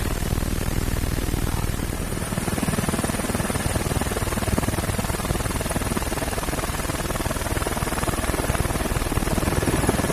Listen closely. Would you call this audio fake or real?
fake